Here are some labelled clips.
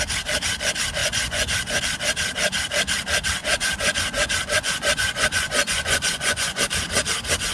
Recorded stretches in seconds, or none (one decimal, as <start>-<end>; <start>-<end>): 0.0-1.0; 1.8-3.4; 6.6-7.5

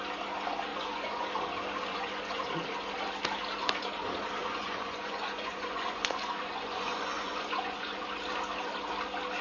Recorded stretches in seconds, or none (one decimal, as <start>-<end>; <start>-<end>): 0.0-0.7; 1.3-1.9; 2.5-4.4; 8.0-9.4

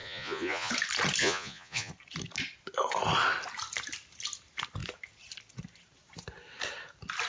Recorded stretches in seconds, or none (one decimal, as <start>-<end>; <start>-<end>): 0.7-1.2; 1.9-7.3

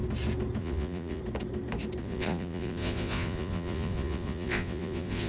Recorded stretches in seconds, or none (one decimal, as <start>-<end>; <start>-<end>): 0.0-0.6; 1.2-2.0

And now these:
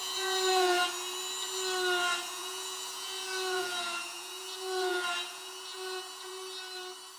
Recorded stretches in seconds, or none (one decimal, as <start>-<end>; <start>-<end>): 0.9-2.0; 6.3-7.2